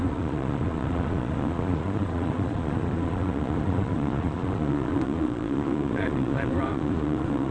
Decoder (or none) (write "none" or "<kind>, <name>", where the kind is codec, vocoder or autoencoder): vocoder, Vocos